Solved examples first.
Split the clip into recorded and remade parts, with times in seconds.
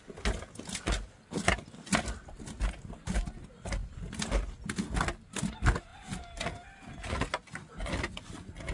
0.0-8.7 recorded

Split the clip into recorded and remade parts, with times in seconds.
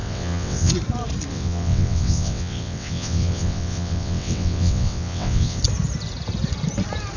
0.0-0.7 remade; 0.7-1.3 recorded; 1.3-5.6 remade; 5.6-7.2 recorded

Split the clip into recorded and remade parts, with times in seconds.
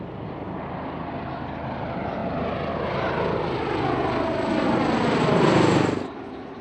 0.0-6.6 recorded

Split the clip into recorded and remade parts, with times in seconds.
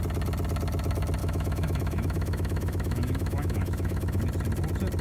0.0-1.2 recorded; 1.2-4.2 remade; 4.2-5.0 recorded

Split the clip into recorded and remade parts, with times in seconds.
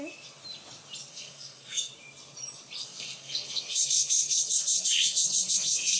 0.0-1.1 recorded; 1.1-1.9 remade; 1.9-2.8 recorded; 2.8-6.0 remade